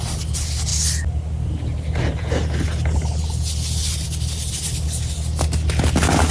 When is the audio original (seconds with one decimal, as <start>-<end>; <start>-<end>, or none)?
0.0-6.3